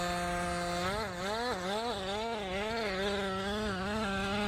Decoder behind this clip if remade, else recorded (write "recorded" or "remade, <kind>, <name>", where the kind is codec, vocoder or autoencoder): recorded